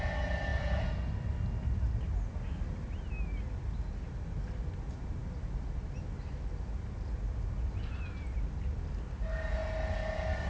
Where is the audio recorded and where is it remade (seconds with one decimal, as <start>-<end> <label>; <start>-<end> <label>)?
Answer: 0.0-10.5 recorded